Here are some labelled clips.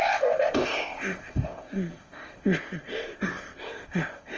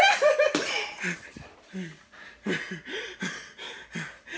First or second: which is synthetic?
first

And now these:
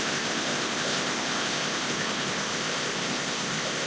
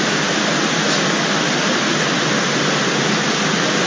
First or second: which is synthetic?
first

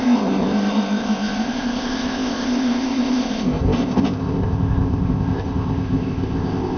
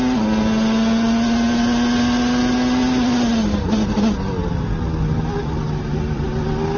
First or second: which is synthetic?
first